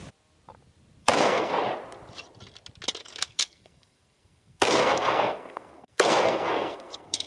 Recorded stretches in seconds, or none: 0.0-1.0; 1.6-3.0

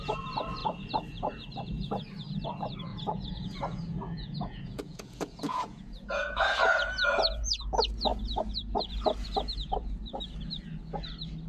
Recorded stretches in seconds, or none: 0.0-2.9; 6.9-11.5